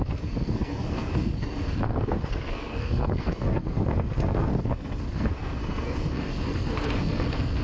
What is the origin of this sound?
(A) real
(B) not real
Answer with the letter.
B